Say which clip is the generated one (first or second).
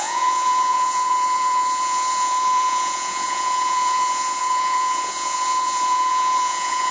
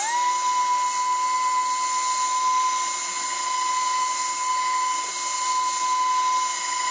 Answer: first